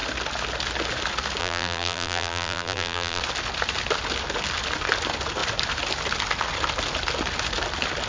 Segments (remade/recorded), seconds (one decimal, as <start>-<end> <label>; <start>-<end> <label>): 0.0-1.4 recorded; 1.4-3.2 remade; 3.2-8.1 recorded